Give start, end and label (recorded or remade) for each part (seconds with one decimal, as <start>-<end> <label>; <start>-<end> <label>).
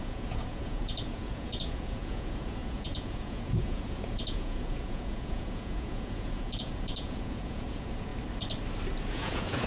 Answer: 0.0-8.1 remade; 8.1-9.0 recorded; 9.0-9.7 remade